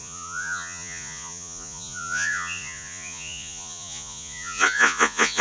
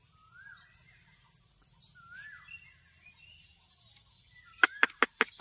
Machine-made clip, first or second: first